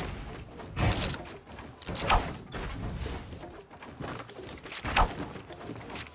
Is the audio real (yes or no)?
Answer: yes